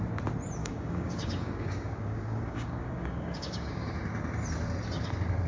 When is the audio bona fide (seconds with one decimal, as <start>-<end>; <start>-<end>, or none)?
0.0-0.6; 3.9-5.5